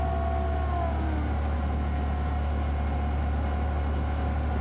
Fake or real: real